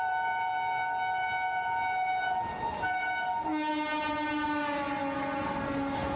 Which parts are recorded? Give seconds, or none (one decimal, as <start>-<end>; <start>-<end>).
0.0-6.2